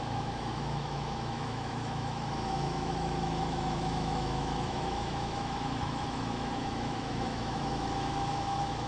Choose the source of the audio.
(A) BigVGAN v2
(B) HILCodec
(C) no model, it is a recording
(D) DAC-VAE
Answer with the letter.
D